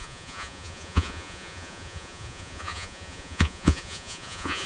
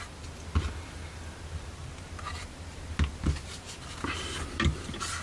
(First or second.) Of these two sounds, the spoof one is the first